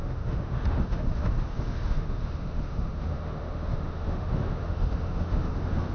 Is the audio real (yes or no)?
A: no